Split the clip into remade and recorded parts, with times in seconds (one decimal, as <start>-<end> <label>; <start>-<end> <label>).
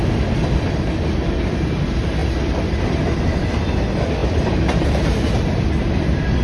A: 0.0-4.2 recorded; 4.2-5.0 remade; 5.0-6.4 recorded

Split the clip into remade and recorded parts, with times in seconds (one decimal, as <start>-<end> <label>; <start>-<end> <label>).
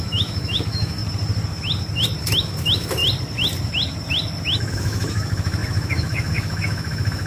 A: 0.0-1.0 remade; 1.0-2.2 recorded; 2.2-3.0 remade; 3.0-4.7 recorded; 4.7-7.3 remade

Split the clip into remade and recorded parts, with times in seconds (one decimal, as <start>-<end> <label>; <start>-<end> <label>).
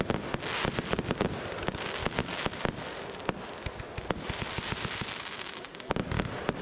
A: 0.0-2.0 recorded; 2.0-2.6 remade; 2.6-6.6 recorded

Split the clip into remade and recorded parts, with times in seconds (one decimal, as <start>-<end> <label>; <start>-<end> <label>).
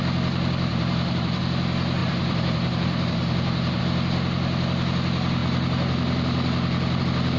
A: 0.0-0.7 recorded; 0.7-1.4 remade; 1.4-2.0 recorded; 2.0-3.8 remade; 3.8-7.4 recorded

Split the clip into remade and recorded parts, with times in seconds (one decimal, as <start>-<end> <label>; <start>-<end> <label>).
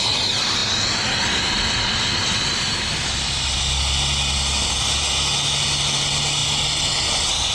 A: 0.0-7.5 recorded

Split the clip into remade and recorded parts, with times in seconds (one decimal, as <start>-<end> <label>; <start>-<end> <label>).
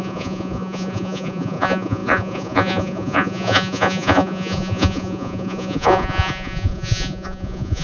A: 0.0-7.8 remade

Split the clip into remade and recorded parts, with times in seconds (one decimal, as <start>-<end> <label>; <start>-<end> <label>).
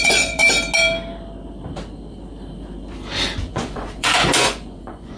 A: 0.0-0.4 remade; 0.4-3.5 recorded; 3.5-5.2 remade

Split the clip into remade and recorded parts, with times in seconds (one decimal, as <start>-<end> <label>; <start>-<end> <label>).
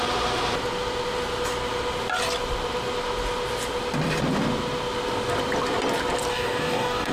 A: 0.0-6.3 recorded; 6.3-7.1 remade